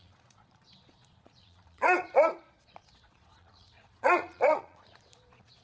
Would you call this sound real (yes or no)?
no